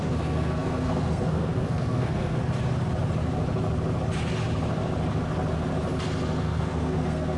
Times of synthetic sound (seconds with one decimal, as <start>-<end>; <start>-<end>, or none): 0.0-2.4; 6.4-7.4